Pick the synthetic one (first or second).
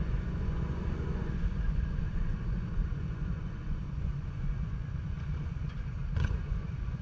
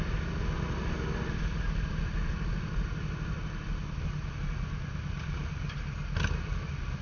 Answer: first